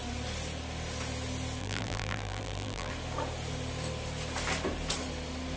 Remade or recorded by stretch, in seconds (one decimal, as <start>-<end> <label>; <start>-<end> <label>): 0.0-1.6 recorded; 1.6-2.9 remade; 2.9-5.6 recorded